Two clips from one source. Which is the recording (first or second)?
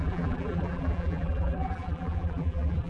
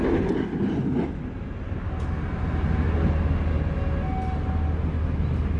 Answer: second